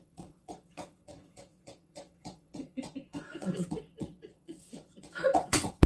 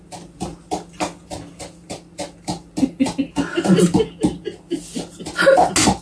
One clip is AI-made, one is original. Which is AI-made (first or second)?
first